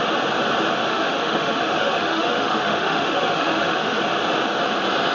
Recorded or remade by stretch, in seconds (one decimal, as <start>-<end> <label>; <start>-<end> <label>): 0.0-0.9 recorded; 0.9-4.0 remade; 4.0-5.1 recorded